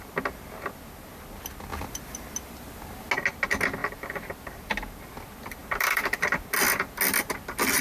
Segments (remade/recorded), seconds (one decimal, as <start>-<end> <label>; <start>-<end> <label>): 0.0-1.7 recorded; 1.7-3.1 remade; 3.1-3.8 recorded; 3.8-5.0 remade; 5.0-5.6 recorded; 5.6-6.9 remade; 6.9-7.8 recorded